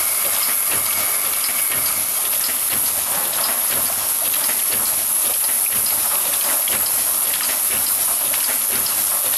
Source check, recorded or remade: recorded